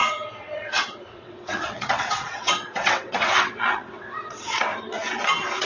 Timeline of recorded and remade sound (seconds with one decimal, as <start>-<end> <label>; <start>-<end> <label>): 0.0-4.7 remade; 4.7-5.6 recorded